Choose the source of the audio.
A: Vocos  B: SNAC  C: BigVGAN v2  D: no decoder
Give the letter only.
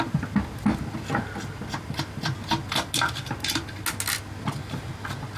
D